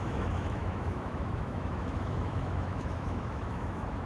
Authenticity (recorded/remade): remade